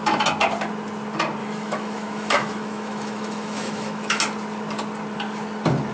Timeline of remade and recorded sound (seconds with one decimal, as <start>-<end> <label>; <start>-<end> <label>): 0.0-1.4 recorded; 1.4-4.2 remade; 4.2-5.9 recorded